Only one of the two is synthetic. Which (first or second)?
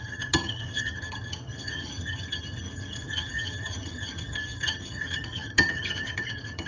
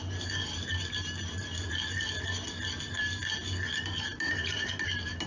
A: first